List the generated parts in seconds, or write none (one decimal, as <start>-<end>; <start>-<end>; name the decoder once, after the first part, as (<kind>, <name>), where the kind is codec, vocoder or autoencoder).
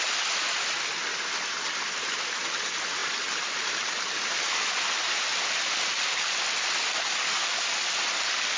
none